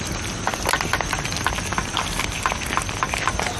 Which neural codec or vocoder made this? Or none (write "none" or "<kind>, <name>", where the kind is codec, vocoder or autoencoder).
none